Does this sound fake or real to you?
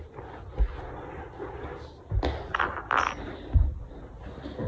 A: real